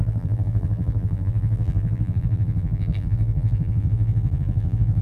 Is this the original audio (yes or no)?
no